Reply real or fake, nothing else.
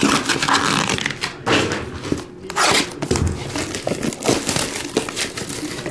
real